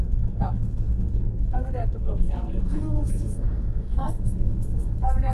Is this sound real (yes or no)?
no